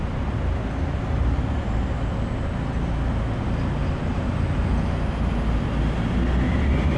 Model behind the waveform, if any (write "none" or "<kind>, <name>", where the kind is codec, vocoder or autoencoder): none